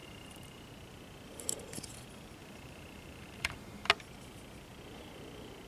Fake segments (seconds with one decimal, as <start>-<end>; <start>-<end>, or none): 0.0-0.6; 2.4-3.9